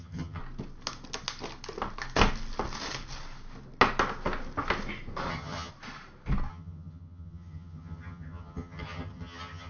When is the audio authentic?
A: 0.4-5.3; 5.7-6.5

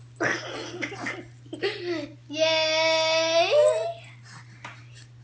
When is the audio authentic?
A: 0.0-5.2